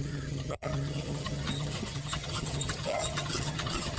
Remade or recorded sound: remade